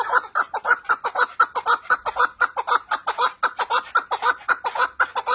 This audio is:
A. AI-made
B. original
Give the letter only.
B